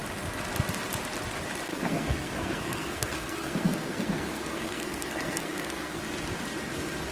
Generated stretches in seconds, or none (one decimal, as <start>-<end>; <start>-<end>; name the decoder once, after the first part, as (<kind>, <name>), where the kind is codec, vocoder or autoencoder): 1.7-6.0 (codec, SNAC)

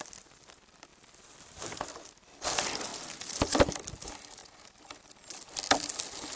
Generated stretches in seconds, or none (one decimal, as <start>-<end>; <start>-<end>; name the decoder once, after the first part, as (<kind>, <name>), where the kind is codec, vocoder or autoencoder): 4.4-5.0 (vocoder, BigVGAN v2)

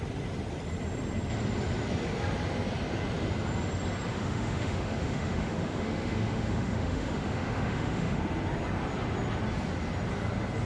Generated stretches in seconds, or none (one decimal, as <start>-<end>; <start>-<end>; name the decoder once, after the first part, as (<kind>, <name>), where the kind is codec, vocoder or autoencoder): 4.1-8.2 (autoencoder, DAC-VAE)

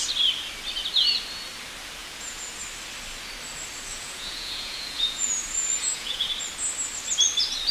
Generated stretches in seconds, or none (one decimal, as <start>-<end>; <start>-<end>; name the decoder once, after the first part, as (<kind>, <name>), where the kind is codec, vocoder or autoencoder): 2.0-2.5 (vocoder, Vocos); 3.9-6.3

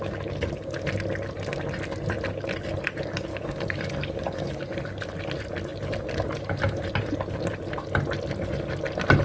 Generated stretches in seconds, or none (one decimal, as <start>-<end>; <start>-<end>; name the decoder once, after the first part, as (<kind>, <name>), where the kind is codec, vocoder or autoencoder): 3.3-4.6 (codec, DAC)